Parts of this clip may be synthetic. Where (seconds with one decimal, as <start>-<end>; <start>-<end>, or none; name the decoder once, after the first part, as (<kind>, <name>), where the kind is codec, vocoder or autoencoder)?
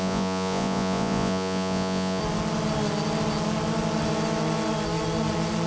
0.0-2.2 (vocoder, Vocos)